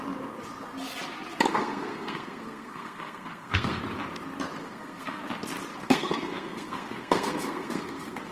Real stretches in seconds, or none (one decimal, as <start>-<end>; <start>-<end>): 0.0-1.5; 3.8-4.6; 5.2-5.8